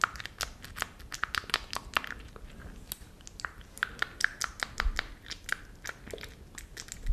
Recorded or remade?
recorded